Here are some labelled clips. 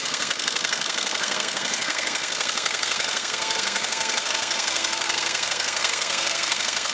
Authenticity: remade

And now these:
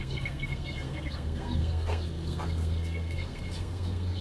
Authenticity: remade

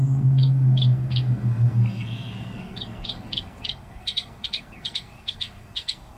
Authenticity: remade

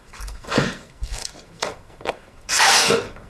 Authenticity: remade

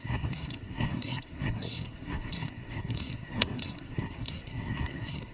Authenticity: remade